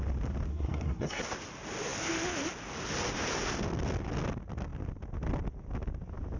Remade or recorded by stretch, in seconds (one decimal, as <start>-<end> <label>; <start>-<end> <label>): 0.0-0.5 recorded; 0.5-1.2 remade; 1.2-6.4 recorded